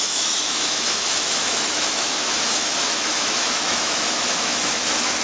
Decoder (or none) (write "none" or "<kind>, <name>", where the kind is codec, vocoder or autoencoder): autoencoder, DAC-VAE